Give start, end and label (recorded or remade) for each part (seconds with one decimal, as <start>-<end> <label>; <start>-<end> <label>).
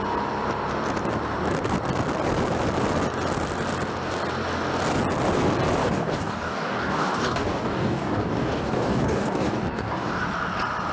0.0-5.8 recorded; 5.8-10.2 remade; 10.2-10.9 recorded